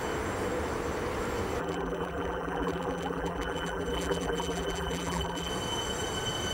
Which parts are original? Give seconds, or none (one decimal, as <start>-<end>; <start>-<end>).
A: 0.0-1.6; 5.5-6.5